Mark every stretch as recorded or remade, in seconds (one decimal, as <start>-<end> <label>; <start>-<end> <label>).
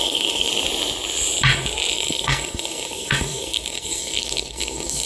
0.0-0.5 remade; 0.5-1.9 recorded; 1.9-5.1 remade